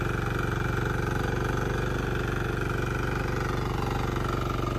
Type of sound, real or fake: real